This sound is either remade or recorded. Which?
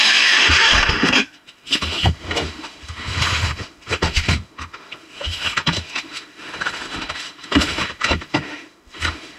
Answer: remade